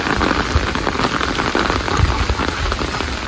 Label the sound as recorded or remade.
recorded